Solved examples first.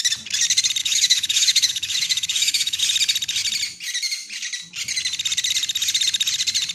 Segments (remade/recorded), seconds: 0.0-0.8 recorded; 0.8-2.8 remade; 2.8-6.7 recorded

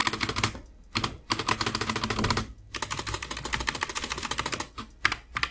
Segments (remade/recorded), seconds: 0.0-5.5 recorded